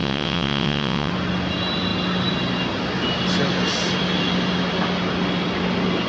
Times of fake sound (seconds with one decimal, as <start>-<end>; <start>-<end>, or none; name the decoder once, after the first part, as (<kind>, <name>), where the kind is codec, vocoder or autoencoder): 0.0-1.1 (vocoder, WaveNeXt)